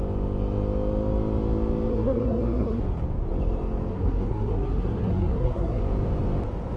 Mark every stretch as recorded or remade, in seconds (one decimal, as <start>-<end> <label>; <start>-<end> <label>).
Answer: 0.0-1.9 recorded; 1.9-2.8 remade; 2.8-3.9 recorded; 3.9-5.8 remade; 5.8-6.8 recorded